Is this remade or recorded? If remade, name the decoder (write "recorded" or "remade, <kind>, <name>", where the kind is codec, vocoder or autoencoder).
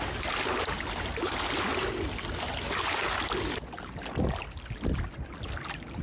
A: recorded